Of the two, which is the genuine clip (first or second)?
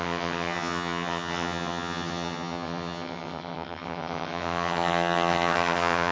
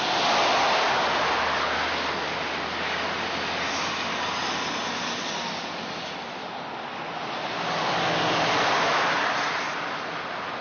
second